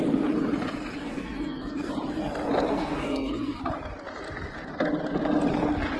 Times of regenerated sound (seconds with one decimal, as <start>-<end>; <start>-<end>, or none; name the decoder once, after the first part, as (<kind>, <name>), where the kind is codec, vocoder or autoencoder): 1.0-1.9 (codec, SNAC); 2.7-3.6